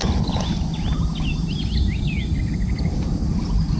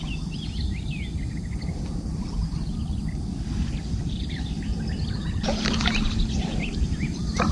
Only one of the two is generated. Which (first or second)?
second